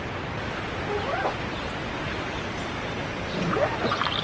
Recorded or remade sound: recorded